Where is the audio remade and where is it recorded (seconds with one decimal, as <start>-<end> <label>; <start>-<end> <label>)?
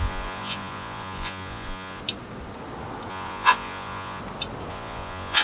0.0-2.0 remade; 2.0-3.1 recorded; 3.1-4.2 remade; 4.2-4.7 recorded; 4.7-5.4 remade